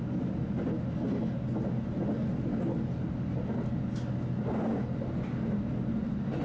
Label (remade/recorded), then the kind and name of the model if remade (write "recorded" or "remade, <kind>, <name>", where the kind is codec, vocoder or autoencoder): recorded